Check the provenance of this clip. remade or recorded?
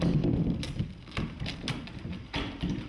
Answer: recorded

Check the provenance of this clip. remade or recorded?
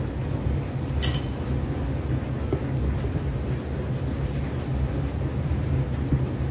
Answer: recorded